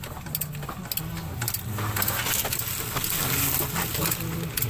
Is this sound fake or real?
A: real